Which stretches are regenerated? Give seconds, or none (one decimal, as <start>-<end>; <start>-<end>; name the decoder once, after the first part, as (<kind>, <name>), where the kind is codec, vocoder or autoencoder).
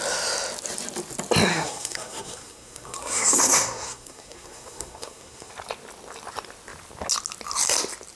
1.5-5.5 (codec, SNAC)